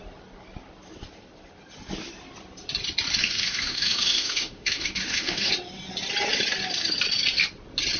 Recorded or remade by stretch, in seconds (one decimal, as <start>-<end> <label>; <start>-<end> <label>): 0.0-3.2 recorded; 3.2-5.5 remade; 5.5-8.0 recorded